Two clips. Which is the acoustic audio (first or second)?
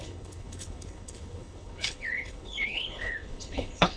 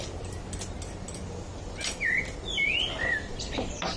second